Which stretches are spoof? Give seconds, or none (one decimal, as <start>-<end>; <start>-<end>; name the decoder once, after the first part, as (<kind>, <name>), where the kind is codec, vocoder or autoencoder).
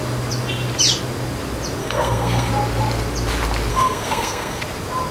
1.8-2.5 (codec, SNAC); 3.7-4.6